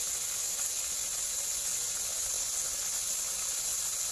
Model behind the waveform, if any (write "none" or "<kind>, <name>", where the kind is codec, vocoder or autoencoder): none